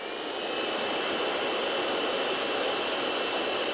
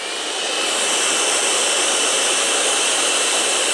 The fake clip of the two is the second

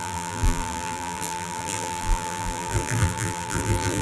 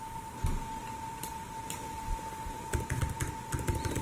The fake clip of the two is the first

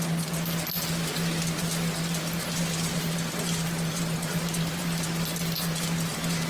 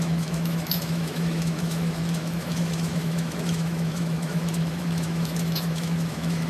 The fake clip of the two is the second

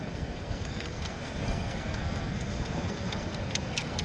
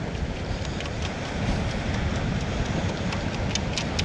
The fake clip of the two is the first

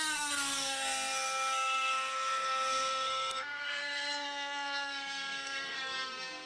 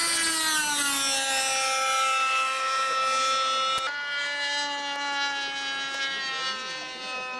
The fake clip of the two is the first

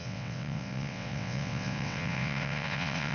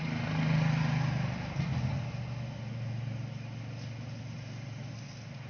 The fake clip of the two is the first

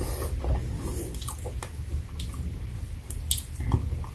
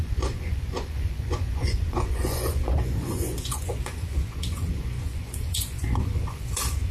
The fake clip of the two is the second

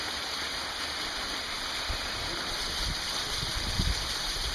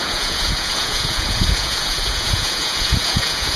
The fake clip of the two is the second